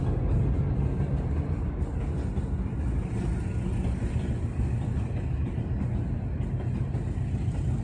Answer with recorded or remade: recorded